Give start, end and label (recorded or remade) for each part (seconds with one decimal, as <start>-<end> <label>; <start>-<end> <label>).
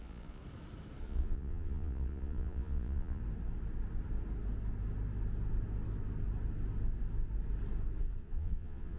0.0-0.4 remade; 0.4-1.0 recorded; 1.0-3.2 remade; 3.2-8.2 recorded; 8.2-9.0 remade